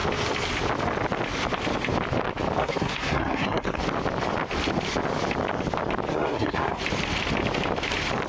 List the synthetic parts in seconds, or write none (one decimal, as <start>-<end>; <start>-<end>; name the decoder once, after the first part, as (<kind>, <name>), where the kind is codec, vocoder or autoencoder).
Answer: 2.6-3.8 (codec, SNAC); 6.1-6.8